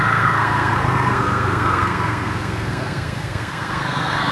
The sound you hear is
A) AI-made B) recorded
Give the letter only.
A